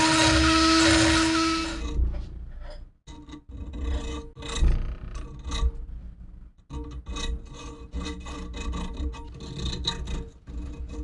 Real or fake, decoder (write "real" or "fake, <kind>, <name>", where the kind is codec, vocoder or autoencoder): real